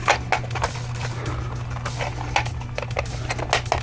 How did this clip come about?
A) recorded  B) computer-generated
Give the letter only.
A